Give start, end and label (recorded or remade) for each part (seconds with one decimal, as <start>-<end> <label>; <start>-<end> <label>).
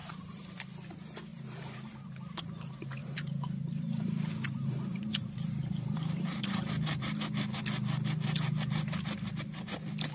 0.0-0.6 remade; 0.6-1.3 recorded; 1.3-1.9 remade; 1.9-3.0 recorded; 3.0-6.7 remade; 6.7-10.1 recorded